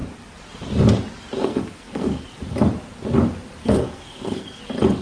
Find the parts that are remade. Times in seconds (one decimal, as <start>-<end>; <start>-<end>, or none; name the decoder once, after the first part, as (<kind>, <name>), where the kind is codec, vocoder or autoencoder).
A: 1.4-2.2 (codec, SNAC); 3.6-4.6